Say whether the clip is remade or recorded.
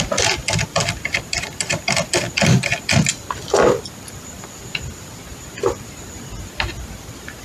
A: recorded